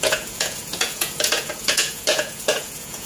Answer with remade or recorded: remade